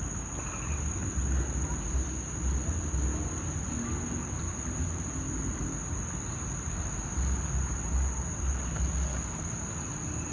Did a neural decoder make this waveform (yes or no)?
no